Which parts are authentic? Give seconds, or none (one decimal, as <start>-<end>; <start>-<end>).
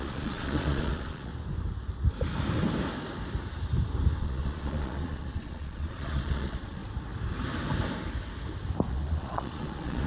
1.3-4.2; 6.8-8.9